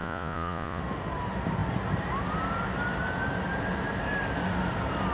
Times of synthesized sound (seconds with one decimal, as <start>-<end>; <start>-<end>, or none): 0.0-0.8